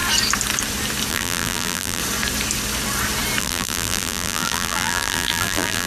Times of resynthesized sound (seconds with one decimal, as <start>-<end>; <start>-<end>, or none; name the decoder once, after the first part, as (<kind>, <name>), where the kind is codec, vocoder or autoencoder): 1.1-2.0 (vocoder, BigVGAN v2); 3.4-5.9